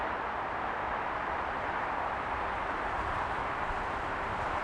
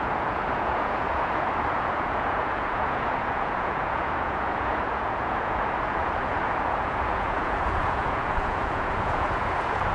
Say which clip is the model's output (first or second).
second